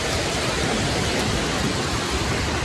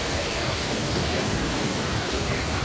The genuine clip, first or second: first